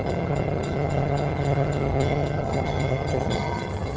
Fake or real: fake